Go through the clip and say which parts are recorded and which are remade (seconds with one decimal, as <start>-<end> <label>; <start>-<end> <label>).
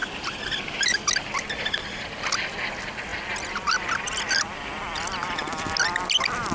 0.0-6.5 recorded